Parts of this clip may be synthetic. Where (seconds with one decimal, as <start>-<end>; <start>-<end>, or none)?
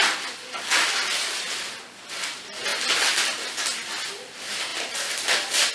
none